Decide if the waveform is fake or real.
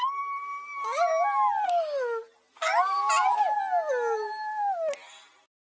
real